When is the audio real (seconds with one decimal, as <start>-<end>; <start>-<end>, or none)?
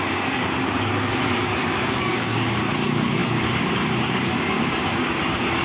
none